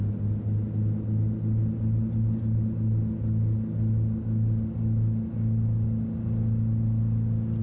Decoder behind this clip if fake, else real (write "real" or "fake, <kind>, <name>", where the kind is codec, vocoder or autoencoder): real